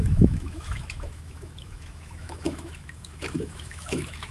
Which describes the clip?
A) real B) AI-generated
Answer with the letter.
B